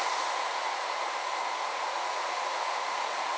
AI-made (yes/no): yes